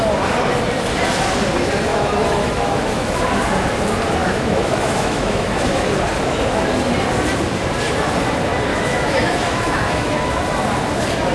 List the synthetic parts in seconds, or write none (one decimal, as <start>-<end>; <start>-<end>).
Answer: 1.9-3.2; 4.2-6.0; 8.7-10.3